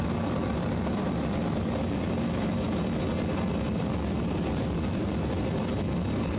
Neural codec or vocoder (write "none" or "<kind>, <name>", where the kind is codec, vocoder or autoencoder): none